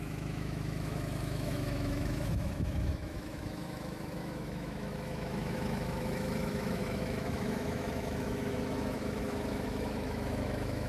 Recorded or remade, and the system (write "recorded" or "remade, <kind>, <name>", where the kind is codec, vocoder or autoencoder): remade, autoencoder, DAC-VAE